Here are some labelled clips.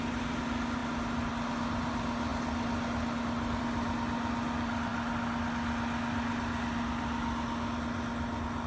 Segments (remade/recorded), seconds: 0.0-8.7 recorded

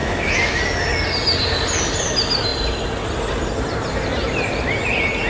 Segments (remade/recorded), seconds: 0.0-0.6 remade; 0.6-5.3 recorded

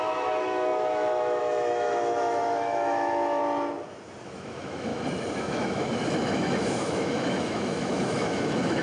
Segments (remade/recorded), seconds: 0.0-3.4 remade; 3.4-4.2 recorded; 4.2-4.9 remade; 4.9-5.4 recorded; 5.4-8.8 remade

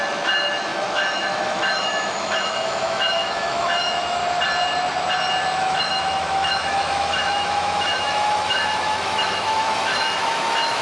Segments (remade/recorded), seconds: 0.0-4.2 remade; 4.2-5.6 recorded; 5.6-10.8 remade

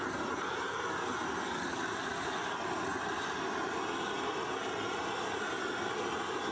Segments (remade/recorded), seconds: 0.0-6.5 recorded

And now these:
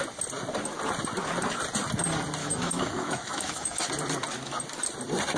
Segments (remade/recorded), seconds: 0.0-2.4 recorded; 2.4-3.9 remade; 3.9-5.4 recorded

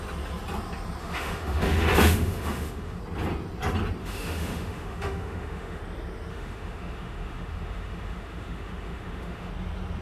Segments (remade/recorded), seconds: 0.0-1.0 recorded; 1.0-3.0 remade; 3.0-4.0 recorded; 4.0-5.8 remade; 5.8-6.3 recorded; 6.3-9.5 remade; 9.5-10.0 recorded

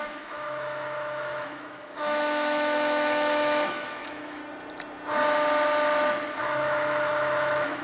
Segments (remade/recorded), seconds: 0.0-4.4 remade; 4.4-6.4 recorded; 6.4-7.8 remade